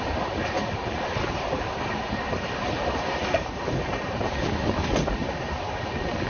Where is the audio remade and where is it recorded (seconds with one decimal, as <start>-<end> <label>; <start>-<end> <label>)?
0.0-0.6 recorded; 0.6-4.4 remade; 4.4-6.3 recorded